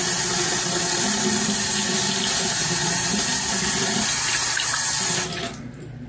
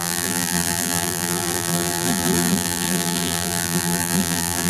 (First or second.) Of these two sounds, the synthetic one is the second